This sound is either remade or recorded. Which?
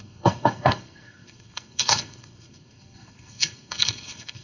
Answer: remade